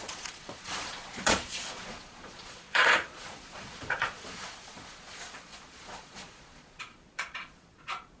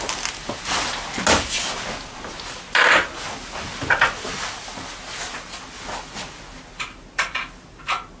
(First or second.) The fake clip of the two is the first